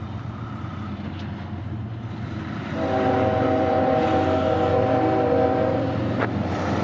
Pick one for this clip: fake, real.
real